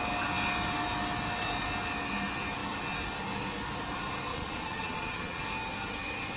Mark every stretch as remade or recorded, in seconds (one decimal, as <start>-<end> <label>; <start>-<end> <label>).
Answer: 0.0-4.3 recorded; 4.3-5.4 remade; 5.4-6.4 recorded

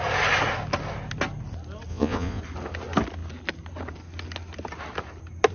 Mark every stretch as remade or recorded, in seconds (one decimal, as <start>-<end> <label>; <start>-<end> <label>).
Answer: 0.0-1.9 recorded; 1.9-2.4 remade; 2.4-5.5 recorded

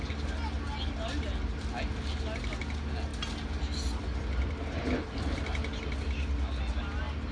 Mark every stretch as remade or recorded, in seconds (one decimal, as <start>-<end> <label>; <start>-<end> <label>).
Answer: 0.0-7.3 recorded

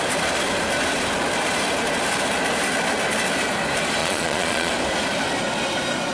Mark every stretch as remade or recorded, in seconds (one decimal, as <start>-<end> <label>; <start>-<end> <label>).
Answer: 0.0-4.0 recorded; 4.0-4.7 remade; 4.7-6.1 recorded

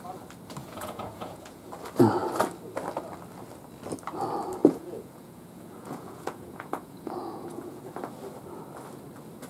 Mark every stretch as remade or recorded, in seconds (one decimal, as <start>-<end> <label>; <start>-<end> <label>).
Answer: 0.0-0.6 recorded; 0.6-1.7 remade; 1.7-4.6 recorded; 4.6-7.8 remade; 7.8-9.5 recorded

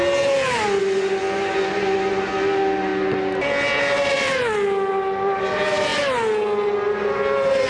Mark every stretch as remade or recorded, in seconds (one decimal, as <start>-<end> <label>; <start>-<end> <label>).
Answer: 0.0-7.7 recorded

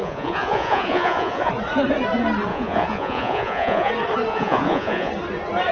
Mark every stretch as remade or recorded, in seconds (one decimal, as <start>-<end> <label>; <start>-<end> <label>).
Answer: 0.0-1.5 remade; 1.5-2.5 recorded; 2.5-3.9 remade; 3.9-4.3 recorded; 4.3-5.1 remade; 5.1-5.7 recorded